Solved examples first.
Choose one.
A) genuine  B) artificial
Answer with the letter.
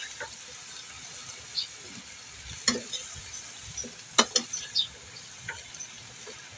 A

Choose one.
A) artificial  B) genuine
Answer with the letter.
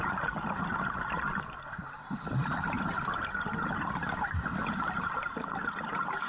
B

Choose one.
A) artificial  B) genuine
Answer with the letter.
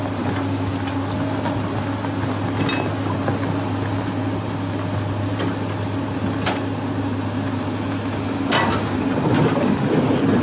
B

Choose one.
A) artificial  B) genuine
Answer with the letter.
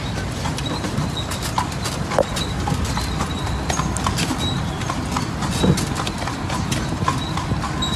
B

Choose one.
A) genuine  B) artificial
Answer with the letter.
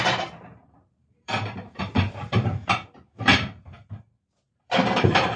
B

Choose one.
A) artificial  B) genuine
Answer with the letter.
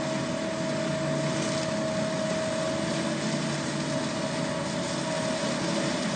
B